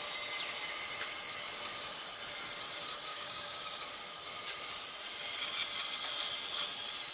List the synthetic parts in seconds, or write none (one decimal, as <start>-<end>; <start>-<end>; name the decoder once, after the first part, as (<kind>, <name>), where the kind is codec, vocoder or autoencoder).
3.1-3.8 (codec, DAC)